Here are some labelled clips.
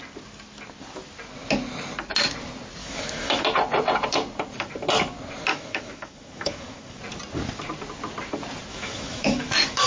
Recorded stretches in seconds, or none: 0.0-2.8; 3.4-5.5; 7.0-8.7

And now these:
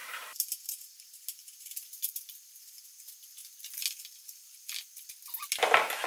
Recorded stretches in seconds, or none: 2.8-6.1

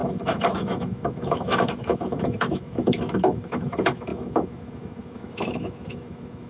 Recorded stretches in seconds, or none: none

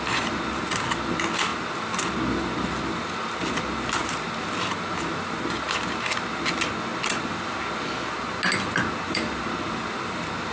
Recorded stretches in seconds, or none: 0.0-10.5